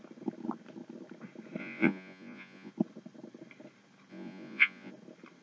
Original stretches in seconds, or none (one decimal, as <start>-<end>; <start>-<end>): 0.0-1.6; 2.7-4.1; 4.9-5.4